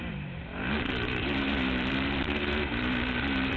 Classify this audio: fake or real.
fake